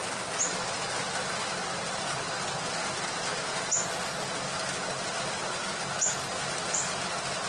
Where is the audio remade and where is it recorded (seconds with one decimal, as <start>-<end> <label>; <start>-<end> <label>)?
0.0-7.5 recorded